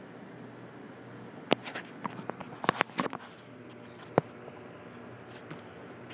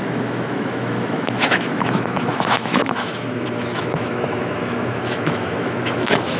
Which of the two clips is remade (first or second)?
second